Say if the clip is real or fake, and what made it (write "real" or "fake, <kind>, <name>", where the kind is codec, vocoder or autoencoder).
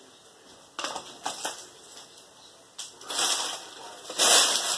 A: real